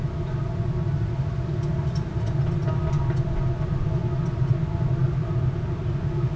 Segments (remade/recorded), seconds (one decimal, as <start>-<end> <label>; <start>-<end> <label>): 0.0-1.7 recorded; 1.7-2.2 remade; 2.2-6.4 recorded